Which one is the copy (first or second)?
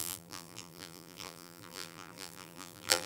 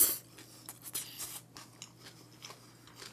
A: first